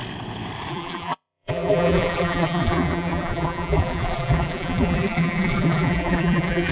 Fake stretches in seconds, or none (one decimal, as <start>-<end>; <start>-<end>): 0.7-6.7